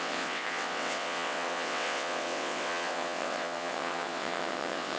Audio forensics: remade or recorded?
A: remade